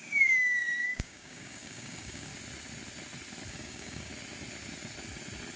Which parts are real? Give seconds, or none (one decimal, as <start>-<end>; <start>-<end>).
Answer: 2.3-3.5; 4.1-5.6